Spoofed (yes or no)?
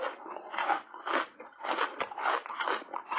no